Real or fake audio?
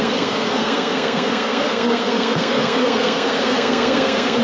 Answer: fake